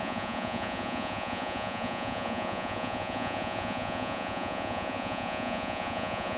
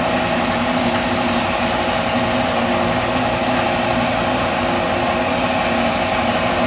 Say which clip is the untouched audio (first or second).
second